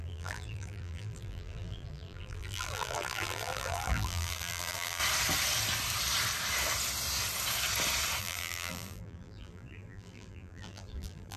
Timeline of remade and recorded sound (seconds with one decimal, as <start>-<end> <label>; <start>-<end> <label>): 0.0-5.0 remade; 5.0-8.2 recorded; 8.2-11.4 remade